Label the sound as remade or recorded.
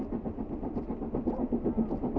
recorded